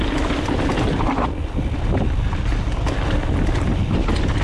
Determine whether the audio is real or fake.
real